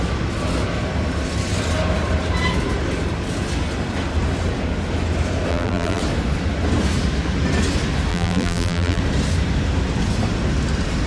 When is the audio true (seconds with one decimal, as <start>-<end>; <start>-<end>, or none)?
0.0-5.5; 6.0-8.1; 9.0-11.1

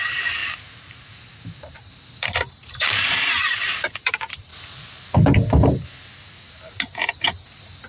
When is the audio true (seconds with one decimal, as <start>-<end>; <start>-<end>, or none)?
4.5-6.5

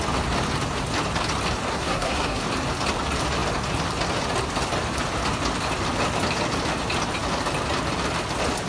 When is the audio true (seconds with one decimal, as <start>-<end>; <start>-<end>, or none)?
0.0-1.7; 2.4-8.7

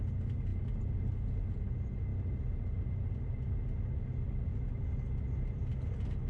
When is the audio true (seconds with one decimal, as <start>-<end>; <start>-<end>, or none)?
0.0-6.3

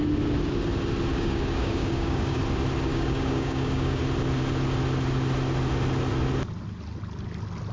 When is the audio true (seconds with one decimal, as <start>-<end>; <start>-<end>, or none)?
0.0-1.1; 2.4-2.9; 4.0-7.7

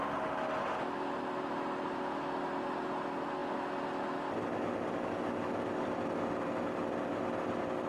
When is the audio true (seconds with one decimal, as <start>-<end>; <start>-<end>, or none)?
0.0-7.9